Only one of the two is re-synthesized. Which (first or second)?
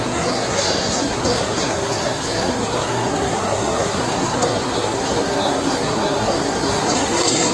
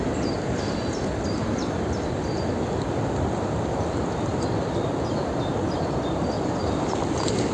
first